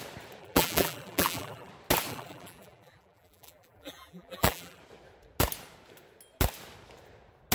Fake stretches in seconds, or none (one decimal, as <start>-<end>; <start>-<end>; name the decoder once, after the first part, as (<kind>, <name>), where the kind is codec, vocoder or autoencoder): 0.4-1.7 (vocoder, BigVGAN v2); 2.1-4.8